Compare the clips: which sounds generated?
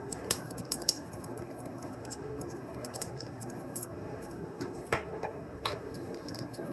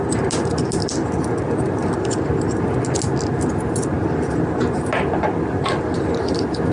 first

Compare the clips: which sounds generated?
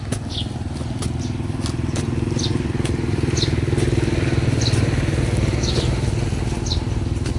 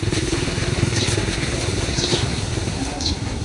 second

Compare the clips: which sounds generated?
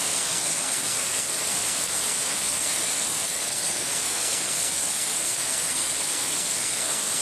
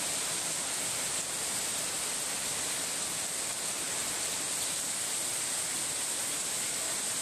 first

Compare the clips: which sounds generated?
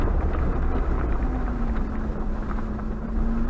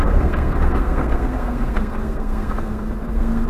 second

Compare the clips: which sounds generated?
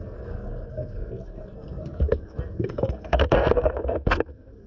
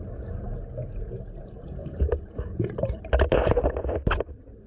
first